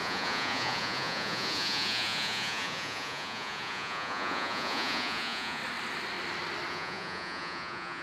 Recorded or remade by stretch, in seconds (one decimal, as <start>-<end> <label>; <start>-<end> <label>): 0.0-5.6 remade; 5.6-6.7 recorded; 6.7-8.0 remade